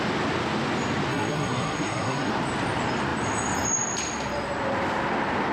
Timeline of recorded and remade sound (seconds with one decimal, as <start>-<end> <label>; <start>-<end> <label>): 0.0-1.1 recorded; 1.1-2.3 remade; 2.3-5.5 recorded